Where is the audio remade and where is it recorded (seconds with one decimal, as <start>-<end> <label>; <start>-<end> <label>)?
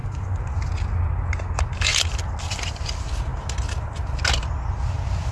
0.0-5.3 recorded